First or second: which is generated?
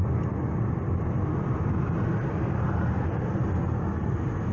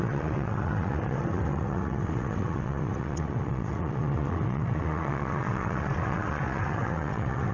second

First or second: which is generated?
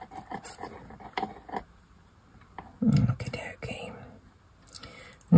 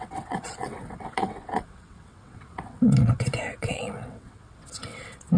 second